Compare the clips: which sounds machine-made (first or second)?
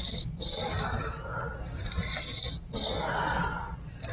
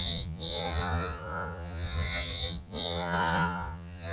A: second